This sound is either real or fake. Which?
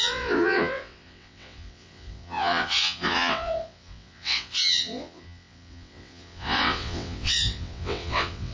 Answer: fake